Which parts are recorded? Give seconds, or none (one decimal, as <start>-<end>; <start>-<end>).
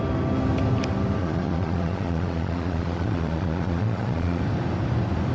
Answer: 0.0-1.2; 4.4-5.3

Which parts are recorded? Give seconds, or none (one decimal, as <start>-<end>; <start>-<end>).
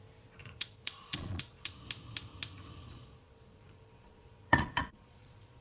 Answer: 0.0-0.4; 1.7-2.8